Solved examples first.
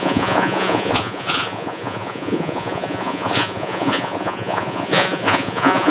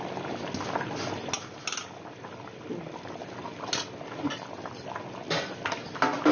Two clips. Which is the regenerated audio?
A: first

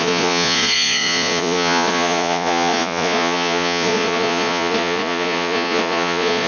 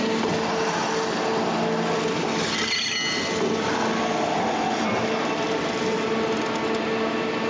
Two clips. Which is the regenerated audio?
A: first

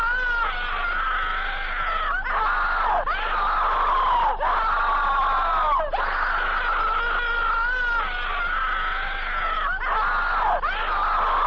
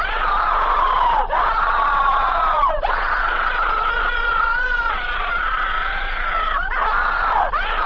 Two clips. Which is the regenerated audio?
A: second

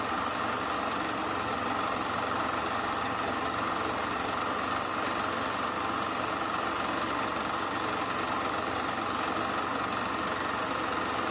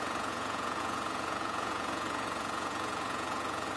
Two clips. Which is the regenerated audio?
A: second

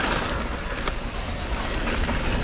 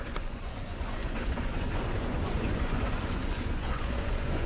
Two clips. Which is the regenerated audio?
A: second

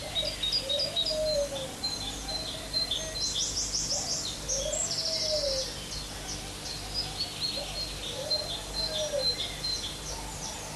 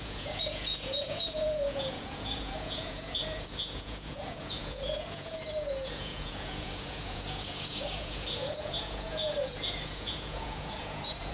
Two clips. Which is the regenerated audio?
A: second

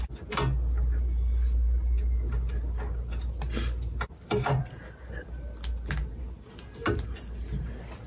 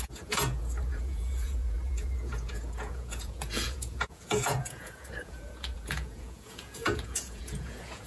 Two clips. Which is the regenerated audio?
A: second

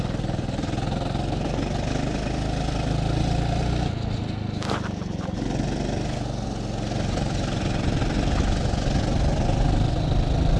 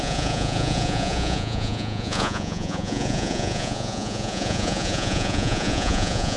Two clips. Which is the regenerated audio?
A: second